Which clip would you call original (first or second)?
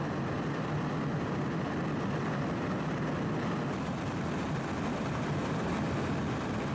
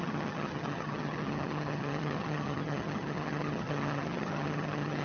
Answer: first